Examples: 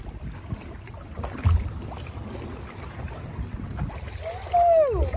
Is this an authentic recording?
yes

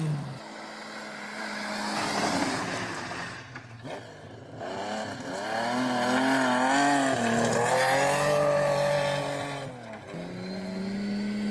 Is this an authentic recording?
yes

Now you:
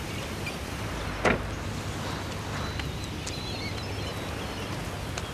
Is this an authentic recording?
yes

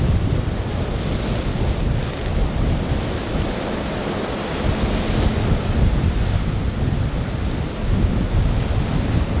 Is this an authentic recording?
yes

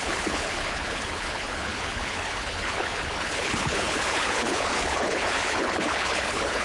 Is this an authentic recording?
no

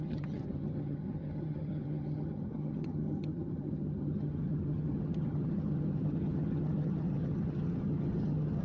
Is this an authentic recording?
no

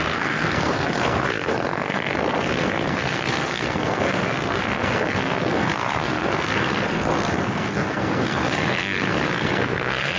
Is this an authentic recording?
no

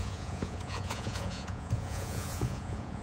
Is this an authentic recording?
no